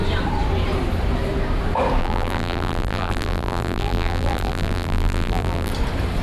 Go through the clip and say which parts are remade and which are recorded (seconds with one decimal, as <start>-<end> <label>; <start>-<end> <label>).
0.0-2.0 recorded; 2.0-5.7 remade; 5.7-6.2 recorded